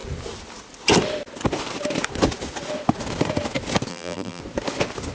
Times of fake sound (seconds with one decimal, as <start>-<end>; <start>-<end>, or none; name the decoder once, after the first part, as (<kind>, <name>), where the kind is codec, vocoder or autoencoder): 3.9-4.4 (vocoder, BigVGAN v2)